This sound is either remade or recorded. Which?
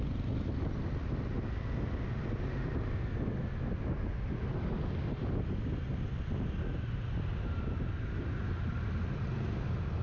recorded